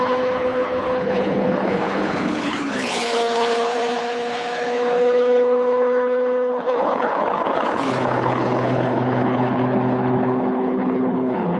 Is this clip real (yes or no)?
no